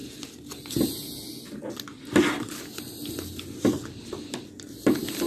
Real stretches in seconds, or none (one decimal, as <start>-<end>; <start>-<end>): 0.0-5.3